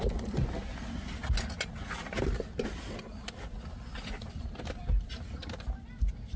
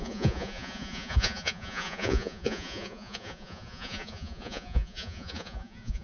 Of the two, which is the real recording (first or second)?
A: first